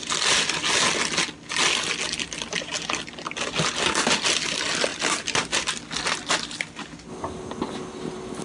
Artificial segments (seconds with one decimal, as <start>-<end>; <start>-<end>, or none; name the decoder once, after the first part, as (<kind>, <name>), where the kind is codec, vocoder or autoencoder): none

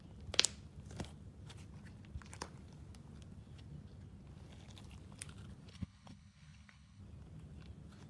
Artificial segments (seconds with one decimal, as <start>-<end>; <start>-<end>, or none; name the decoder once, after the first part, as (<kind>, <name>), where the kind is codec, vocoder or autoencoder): 5.7-7.0 (codec, HILCodec)

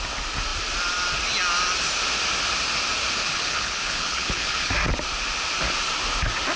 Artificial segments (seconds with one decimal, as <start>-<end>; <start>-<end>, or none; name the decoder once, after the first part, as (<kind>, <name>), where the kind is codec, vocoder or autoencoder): 3.2-4.7 (codec, HILCodec)

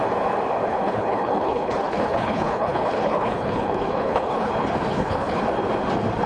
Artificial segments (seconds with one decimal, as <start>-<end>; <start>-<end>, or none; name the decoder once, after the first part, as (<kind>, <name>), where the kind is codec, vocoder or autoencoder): 0.7-4.5 (codec, HILCodec); 4.9-5.4

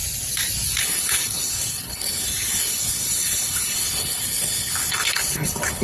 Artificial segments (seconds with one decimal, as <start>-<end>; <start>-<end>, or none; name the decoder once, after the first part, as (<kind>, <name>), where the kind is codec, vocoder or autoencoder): 0.8-5.8 (codec, HILCodec)

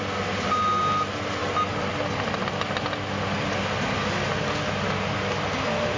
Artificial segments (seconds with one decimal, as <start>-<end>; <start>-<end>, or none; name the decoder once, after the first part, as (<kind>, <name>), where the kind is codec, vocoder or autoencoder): none

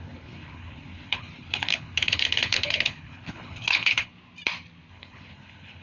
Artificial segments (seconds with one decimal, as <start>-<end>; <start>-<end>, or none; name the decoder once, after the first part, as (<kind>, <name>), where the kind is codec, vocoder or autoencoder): 0.0-4.1 (codec, HILCodec); 4.9-5.8